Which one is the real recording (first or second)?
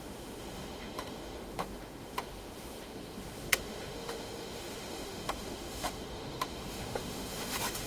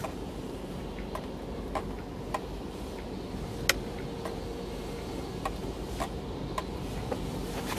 second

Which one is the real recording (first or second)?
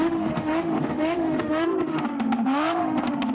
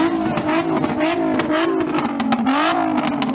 second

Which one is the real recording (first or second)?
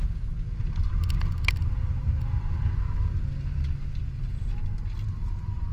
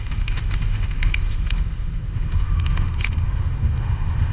first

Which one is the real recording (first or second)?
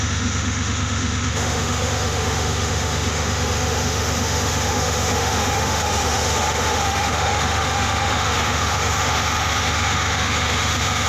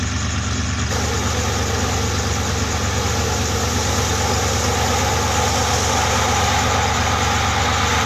second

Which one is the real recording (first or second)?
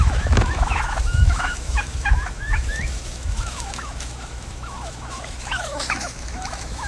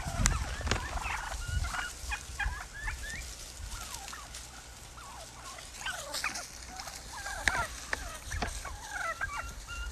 second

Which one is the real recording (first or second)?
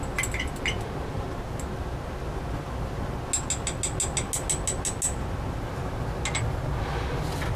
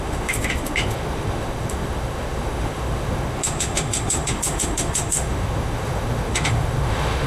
first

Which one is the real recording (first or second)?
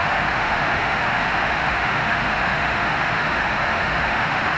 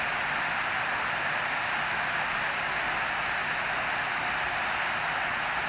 second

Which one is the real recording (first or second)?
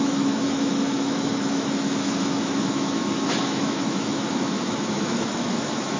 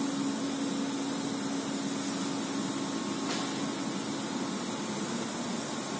second